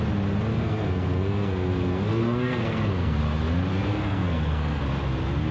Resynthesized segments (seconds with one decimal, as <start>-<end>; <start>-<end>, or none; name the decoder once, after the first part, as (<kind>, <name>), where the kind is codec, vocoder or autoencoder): 0.5-3.2 (codec, SNAC); 3.7-4.8